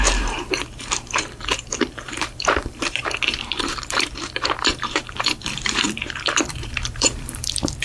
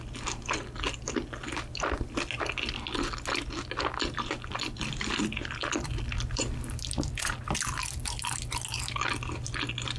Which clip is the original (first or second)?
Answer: second